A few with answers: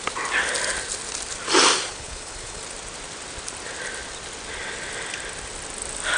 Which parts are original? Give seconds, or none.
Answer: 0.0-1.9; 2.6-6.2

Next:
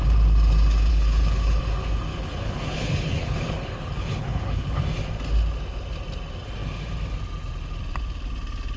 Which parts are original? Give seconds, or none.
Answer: 0.0-0.9; 1.6-2.1; 4.8-8.8

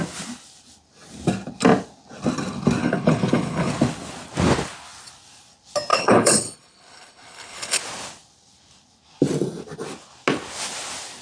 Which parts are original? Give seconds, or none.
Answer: 0.0-2.8; 3.7-5.9; 7.8-11.2